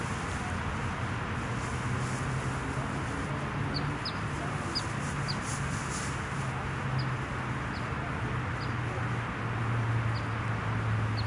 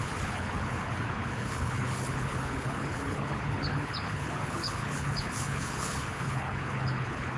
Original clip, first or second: first